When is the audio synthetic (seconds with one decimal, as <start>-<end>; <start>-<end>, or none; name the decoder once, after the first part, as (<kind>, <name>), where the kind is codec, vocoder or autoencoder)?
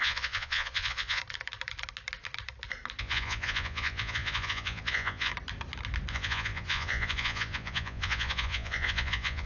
0.0-1.2 (vocoder, Vocos); 3.0-5.3; 6.1-9.5